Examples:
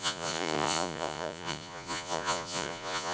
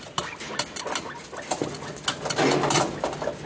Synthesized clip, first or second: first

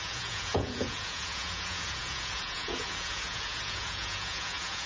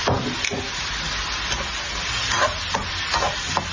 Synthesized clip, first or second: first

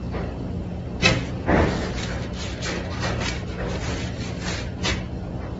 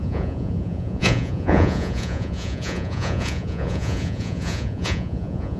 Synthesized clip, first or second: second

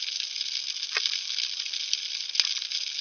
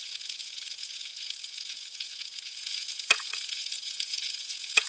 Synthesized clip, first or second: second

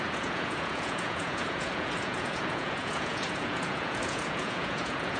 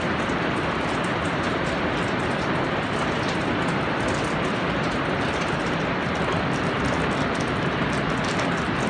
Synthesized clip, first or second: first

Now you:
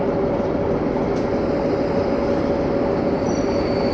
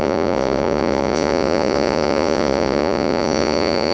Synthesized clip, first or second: second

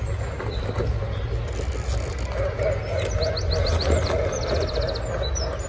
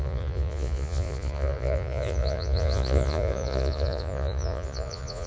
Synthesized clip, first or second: second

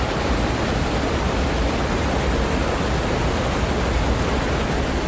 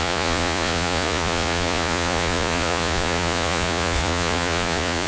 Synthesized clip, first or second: second